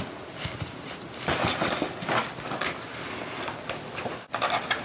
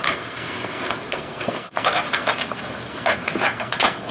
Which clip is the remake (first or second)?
second